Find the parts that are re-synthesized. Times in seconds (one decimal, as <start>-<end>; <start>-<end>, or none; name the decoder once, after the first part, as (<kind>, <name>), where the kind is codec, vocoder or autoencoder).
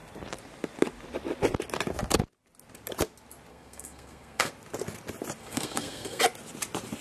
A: 3.5-4.5 (codec, SNAC); 5.4-6.2